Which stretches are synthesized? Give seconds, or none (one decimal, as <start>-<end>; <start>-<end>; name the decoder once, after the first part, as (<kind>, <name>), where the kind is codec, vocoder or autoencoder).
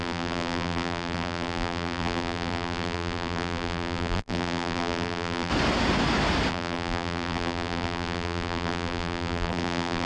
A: 0.0-5.5 (vocoder, BigVGAN v2); 6.5-10.1